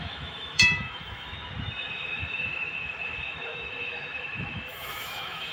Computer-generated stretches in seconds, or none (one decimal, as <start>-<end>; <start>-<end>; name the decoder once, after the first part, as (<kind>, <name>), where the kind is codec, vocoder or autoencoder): 0.0-1.3 (autoencoder, DAC-VAE); 1.9-5.5